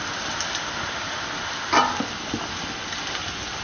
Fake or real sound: real